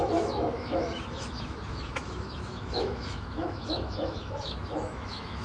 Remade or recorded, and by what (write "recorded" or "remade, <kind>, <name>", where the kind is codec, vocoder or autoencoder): remade, autoencoder, DAC-VAE